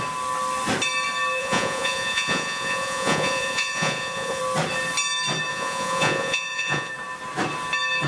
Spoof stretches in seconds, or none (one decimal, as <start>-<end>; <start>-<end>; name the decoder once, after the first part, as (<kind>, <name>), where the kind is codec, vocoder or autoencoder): 1.4-4.4 (vocoder, Vocos); 5.5-6.9